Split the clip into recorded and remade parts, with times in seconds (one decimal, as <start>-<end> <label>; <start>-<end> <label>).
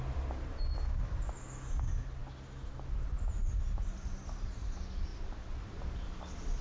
0.0-6.6 recorded